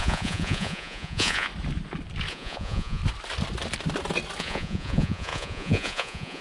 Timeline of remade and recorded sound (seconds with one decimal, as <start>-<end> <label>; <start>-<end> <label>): 0.0-1.5 remade; 1.5-2.3 recorded; 2.3-3.0 remade; 3.0-4.4 recorded; 4.4-6.4 remade